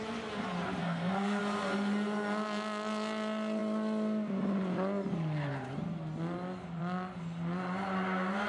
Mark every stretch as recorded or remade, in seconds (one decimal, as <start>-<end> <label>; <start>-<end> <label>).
0.0-0.8 recorded; 0.8-1.4 remade; 1.4-8.5 recorded